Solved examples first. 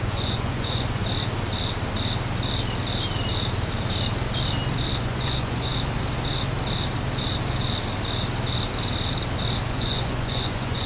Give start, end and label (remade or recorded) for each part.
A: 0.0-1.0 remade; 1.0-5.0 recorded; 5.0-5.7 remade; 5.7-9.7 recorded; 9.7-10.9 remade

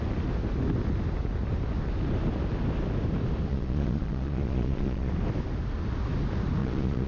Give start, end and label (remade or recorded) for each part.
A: 0.0-3.5 recorded; 3.5-5.1 remade; 5.1-6.6 recorded; 6.6-7.1 remade

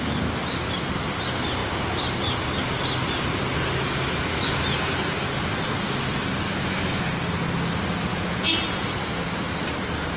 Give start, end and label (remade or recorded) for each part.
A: 0.0-8.1 recorded; 8.1-8.9 remade; 8.9-10.2 recorded

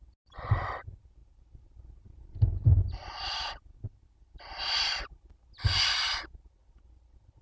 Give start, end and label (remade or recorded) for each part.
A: 0.0-7.4 recorded

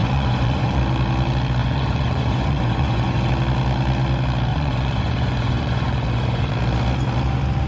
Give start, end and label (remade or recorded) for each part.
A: 0.0-0.8 remade; 0.8-1.6 recorded; 1.6-3.3 remade; 3.3-4.5 recorded; 4.5-6.5 remade; 6.5-7.7 recorded

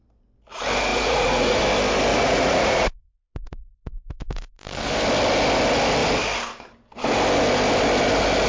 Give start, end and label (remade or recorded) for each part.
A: 0.0-0.9 recorded; 0.9-1.6 remade; 1.6-2.1 recorded; 2.1-4.6 remade; 4.6-8.5 recorded

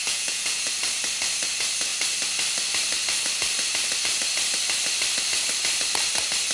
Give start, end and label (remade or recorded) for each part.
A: 0.0-0.7 remade; 0.7-6.5 recorded

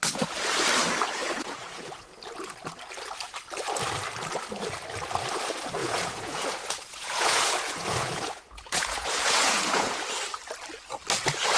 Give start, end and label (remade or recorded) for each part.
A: 0.0-1.2 recorded; 1.2-2.1 remade; 2.1-5.8 recorded; 5.8-10.0 remade; 10.0-11.6 recorded